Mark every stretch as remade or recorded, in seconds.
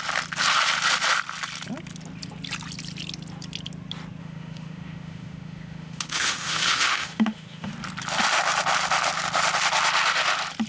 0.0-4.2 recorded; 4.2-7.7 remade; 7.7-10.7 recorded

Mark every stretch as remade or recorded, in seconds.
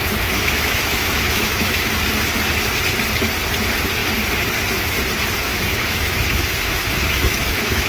0.0-0.4 recorded; 0.4-1.9 remade; 1.9-5.5 recorded; 5.5-7.9 remade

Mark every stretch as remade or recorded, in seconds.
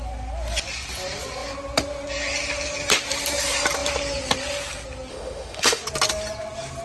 0.0-5.1 recorded; 5.1-5.8 remade; 5.8-6.8 recorded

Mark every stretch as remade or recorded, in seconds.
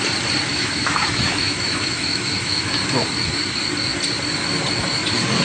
0.0-0.5 recorded; 0.5-2.7 remade; 2.7-5.4 recorded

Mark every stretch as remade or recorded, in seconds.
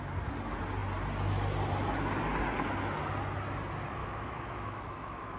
0.0-4.0 recorded; 4.0-5.4 remade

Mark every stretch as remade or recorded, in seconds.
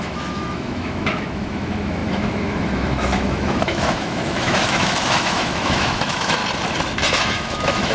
0.0-6.4 remade; 6.4-7.1 recorded; 7.1-7.9 remade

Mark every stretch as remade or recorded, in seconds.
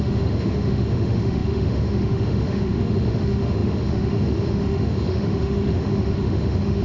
0.0-6.8 remade